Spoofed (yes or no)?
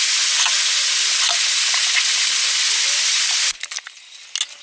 no